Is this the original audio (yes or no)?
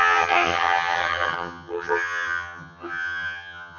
no